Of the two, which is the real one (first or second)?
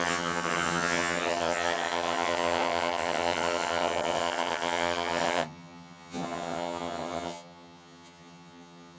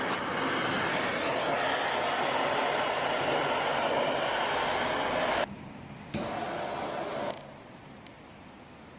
second